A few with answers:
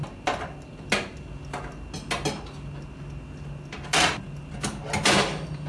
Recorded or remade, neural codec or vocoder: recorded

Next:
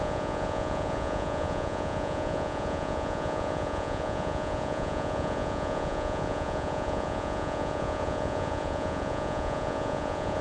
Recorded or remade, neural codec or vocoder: remade, vocoder, Vocos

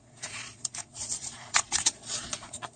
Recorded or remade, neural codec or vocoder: remade, vocoder, Vocos